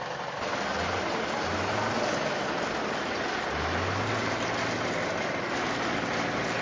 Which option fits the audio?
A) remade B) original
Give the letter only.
B